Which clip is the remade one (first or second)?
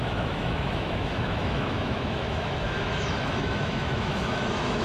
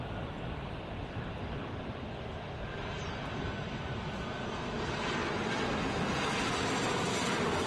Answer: first